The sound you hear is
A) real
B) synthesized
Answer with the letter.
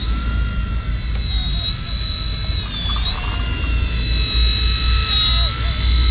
A